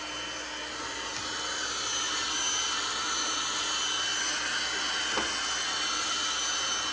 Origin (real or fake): real